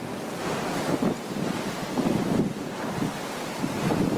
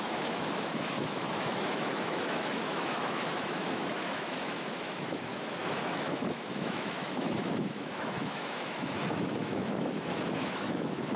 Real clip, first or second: first